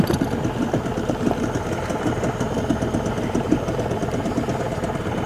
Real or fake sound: real